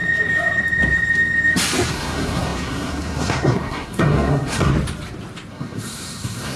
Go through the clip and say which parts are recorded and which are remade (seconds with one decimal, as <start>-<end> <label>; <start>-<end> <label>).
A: 0.0-1.9 recorded; 1.9-4.7 remade; 4.7-5.5 recorded; 5.5-6.6 remade